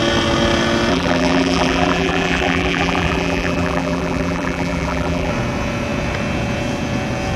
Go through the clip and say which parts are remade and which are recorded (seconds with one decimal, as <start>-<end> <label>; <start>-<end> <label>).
0.0-0.9 recorded; 0.9-5.3 remade; 5.3-7.4 recorded